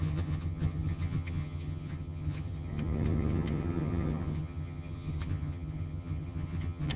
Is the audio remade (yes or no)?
yes